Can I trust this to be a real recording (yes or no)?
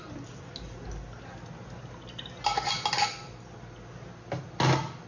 yes